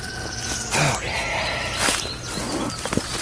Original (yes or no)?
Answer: yes